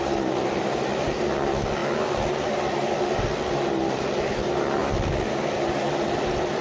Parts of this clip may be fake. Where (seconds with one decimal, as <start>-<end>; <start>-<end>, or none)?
none